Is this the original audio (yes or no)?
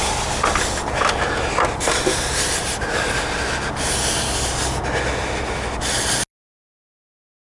yes